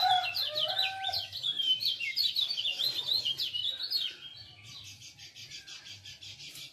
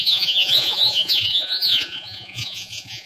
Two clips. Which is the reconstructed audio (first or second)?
second